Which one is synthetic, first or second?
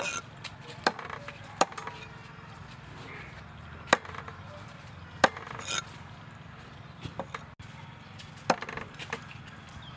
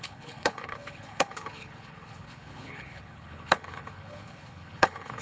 second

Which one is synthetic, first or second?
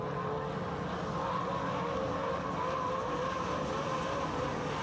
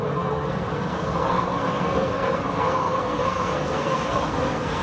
second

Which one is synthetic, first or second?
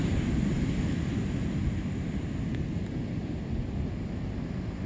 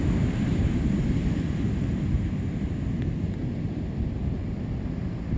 second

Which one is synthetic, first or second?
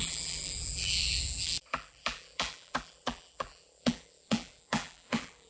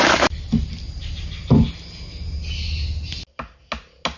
first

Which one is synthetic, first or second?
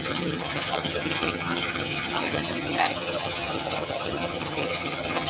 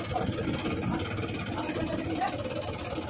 first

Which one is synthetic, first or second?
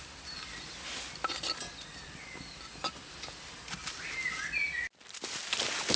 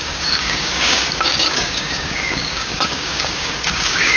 second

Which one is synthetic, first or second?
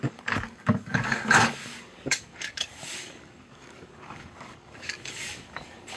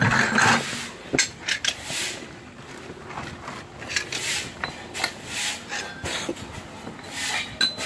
first